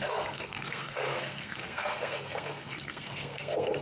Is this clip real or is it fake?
fake